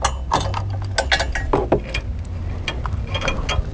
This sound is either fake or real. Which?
real